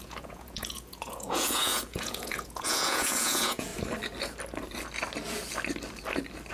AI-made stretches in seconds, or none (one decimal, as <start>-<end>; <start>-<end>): 0.0-3.7